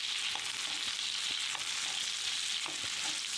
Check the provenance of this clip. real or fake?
real